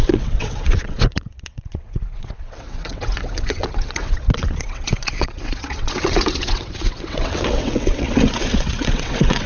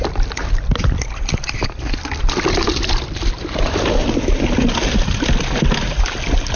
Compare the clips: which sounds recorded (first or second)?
second